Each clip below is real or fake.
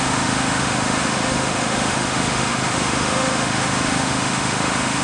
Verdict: fake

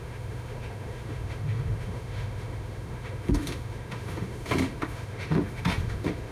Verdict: fake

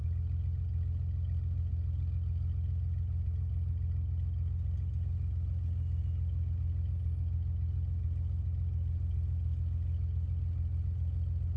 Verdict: real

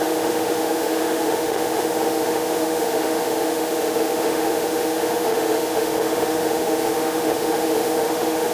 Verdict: fake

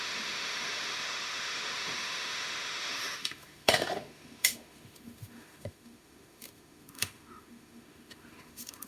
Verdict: fake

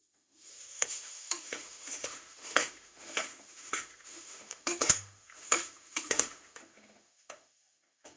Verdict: fake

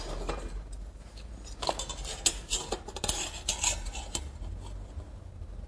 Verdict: real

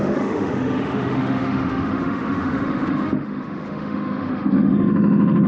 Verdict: fake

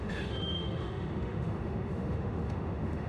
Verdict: fake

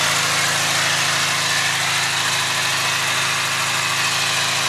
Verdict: real